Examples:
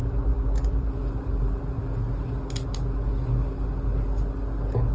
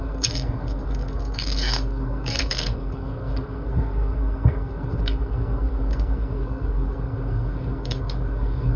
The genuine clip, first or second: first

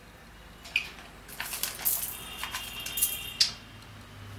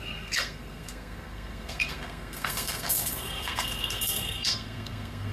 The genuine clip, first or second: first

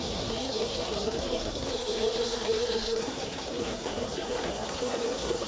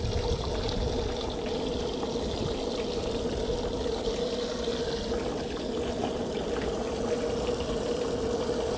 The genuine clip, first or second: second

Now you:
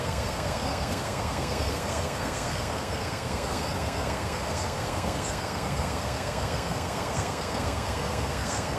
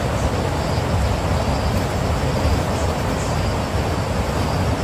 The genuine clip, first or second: second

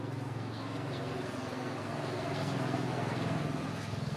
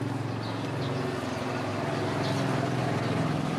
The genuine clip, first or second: second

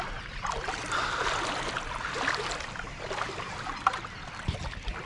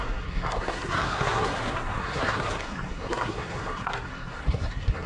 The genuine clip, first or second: first